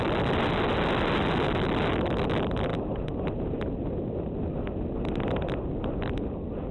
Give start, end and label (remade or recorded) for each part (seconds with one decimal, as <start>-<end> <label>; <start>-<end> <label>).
0.0-6.7 recorded